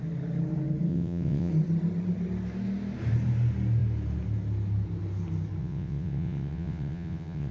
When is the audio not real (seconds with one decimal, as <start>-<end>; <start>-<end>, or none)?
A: 0.9-1.5; 5.6-7.5